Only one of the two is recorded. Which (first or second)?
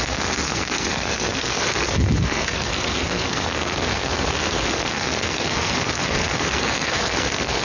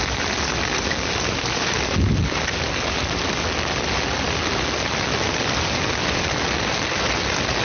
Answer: second